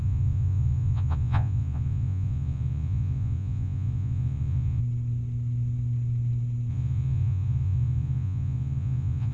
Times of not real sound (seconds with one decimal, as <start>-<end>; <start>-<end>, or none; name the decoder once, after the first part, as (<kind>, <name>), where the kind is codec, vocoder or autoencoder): 0.0-4.8 (vocoder, Vocos); 6.7-9.3

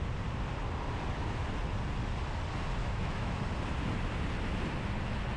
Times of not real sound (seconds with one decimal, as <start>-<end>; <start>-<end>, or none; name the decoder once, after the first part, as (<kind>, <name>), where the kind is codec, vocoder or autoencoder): 2.8-3.4 (autoencoder, DAC-VAE)

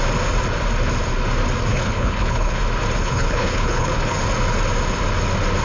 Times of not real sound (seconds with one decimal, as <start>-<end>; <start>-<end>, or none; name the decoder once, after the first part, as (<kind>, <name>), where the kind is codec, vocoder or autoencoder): 1.7-2.6 (codec, HILCodec); 3.0-4.2

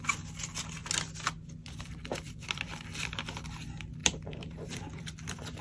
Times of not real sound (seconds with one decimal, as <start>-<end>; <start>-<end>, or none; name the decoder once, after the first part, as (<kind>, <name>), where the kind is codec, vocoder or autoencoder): 4.0-4.8 (vocoder, BigVGAN v2)